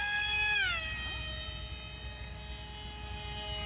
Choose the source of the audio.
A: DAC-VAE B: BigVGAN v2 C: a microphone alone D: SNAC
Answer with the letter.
C